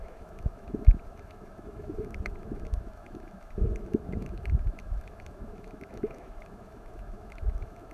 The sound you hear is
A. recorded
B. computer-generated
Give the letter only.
B